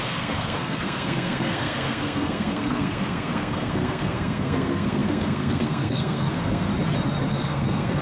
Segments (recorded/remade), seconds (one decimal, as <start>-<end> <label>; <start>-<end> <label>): 0.0-6.7 remade; 6.7-7.3 recorded; 7.3-8.0 remade